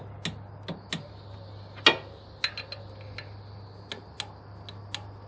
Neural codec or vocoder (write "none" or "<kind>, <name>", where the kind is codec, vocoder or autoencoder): none